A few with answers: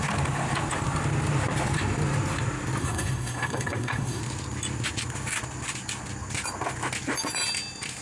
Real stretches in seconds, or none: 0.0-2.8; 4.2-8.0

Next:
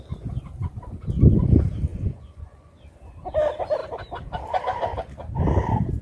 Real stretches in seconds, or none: 0.0-1.9; 2.8-6.0

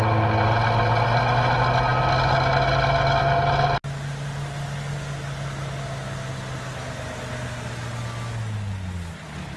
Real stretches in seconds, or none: 0.0-9.6

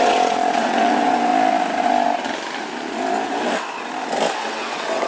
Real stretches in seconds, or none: 1.3-4.4

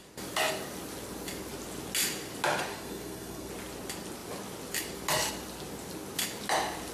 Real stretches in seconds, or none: 0.0-2.7; 3.5-6.9

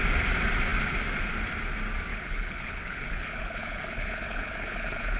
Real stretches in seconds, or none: 0.0-2.1

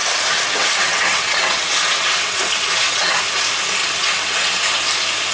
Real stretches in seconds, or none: 3.2-3.8; 4.8-5.3

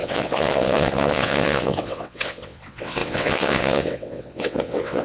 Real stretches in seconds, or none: none